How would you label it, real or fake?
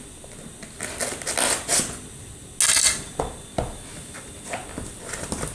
real